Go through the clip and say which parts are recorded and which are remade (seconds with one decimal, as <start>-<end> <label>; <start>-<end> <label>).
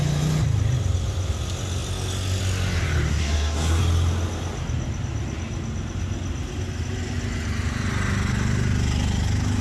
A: 0.0-3.1 recorded; 3.1-3.8 remade; 3.8-9.6 recorded